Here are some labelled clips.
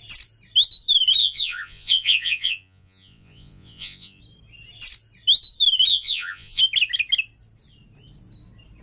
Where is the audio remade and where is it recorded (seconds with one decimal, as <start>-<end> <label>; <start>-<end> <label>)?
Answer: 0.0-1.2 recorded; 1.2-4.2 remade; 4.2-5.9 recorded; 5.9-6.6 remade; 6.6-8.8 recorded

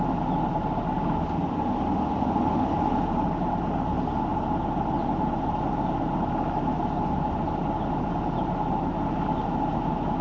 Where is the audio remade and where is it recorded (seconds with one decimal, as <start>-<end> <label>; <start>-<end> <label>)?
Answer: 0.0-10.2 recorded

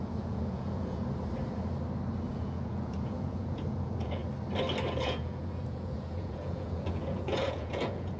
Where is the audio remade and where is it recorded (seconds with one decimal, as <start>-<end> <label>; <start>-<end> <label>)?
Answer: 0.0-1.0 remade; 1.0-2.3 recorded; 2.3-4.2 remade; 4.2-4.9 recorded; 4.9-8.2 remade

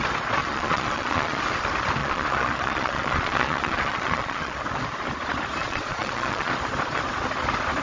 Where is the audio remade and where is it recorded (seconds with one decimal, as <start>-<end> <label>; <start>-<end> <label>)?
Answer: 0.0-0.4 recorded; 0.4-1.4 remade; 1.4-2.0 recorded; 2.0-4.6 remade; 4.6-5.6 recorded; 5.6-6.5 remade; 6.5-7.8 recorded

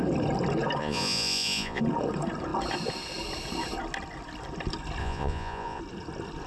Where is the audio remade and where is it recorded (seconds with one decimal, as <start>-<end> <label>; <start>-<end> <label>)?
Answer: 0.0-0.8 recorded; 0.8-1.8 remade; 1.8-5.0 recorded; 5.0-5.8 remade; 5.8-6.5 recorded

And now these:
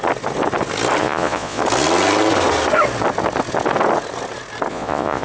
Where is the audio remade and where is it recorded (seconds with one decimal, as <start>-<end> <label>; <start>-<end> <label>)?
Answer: 0.0-1.0 recorded; 1.0-1.6 remade; 1.6-4.7 recorded; 4.7-5.2 remade